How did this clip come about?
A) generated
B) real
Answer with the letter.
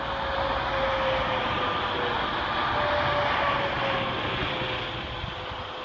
B